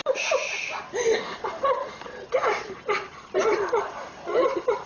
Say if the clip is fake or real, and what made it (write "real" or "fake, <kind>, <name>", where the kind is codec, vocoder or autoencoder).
real